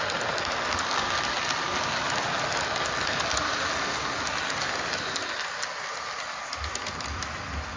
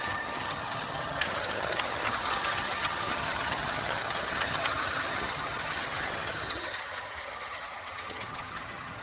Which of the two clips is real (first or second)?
first